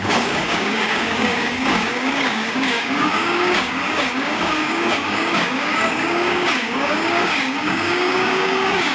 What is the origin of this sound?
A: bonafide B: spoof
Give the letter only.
B